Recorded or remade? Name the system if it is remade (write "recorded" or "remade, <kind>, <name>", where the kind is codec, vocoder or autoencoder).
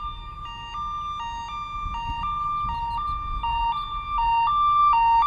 recorded